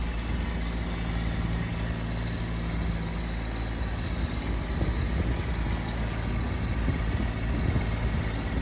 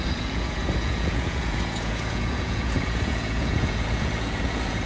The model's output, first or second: second